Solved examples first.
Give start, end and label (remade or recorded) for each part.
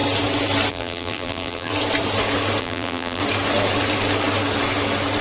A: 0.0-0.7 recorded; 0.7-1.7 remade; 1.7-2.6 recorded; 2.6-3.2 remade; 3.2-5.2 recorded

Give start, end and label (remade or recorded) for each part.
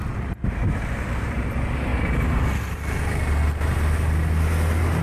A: 0.0-1.9 remade; 1.9-5.0 recorded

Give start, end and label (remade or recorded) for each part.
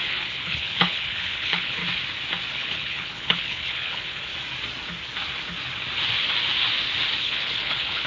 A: 0.0-1.8 remade; 1.8-2.5 recorded; 2.5-4.3 remade; 4.3-7.2 recorded; 7.2-8.1 remade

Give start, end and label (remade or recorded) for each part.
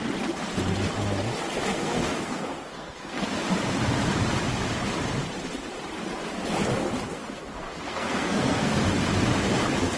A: 0.0-1.7 recorded; 1.7-3.4 remade; 3.4-7.1 recorded; 7.1-8.8 remade; 8.8-10.0 recorded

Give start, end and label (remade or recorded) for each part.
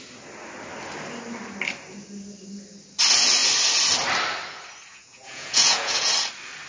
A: 0.0-4.9 recorded; 4.9-6.1 remade; 6.1-6.7 recorded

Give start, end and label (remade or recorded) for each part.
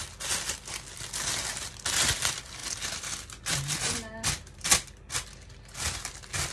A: 0.0-6.5 recorded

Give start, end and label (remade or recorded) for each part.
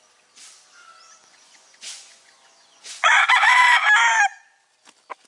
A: 0.0-1.2 recorded; 1.2-3.7 remade; 3.7-5.3 recorded